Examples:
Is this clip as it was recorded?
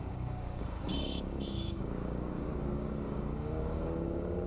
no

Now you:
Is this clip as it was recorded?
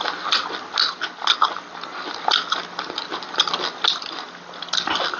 yes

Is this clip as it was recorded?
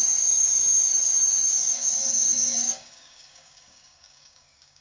no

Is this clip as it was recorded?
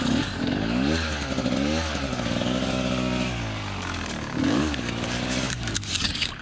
no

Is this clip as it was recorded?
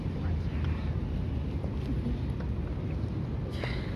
yes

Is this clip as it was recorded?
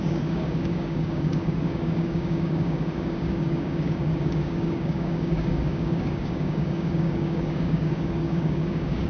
no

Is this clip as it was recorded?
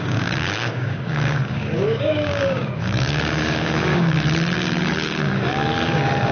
no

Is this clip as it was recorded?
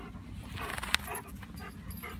yes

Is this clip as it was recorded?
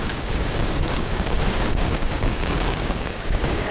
no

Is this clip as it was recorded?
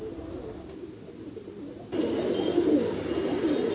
yes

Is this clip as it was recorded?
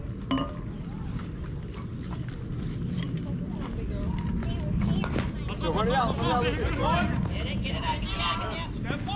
yes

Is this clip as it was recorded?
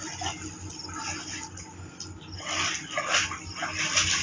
yes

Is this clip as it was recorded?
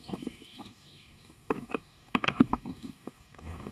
no